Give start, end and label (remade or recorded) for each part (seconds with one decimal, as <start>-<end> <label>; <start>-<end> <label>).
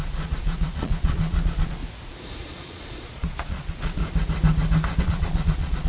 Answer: 0.0-1.8 remade; 1.8-2.4 recorded; 2.4-4.0 remade; 4.0-5.0 recorded; 5.0-5.9 remade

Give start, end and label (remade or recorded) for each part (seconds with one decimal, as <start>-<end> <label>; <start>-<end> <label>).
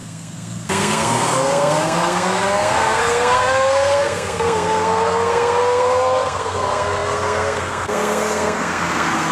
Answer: 0.0-9.3 remade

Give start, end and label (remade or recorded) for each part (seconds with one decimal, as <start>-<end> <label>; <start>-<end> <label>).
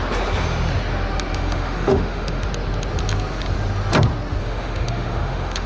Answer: 0.0-1.3 recorded; 1.3-2.5 remade; 2.5-4.4 recorded; 4.4-5.7 remade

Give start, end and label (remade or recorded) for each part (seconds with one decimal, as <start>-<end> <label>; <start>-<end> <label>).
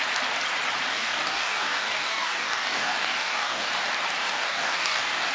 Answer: 0.0-0.9 recorded; 0.9-3.7 remade; 3.7-4.2 recorded; 4.2-5.3 remade